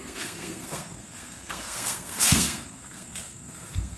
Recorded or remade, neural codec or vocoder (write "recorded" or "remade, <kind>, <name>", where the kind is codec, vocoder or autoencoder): remade, codec, SNAC